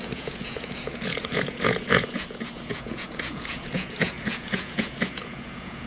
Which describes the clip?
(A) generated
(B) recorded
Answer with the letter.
A